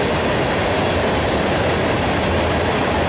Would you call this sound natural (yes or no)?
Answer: yes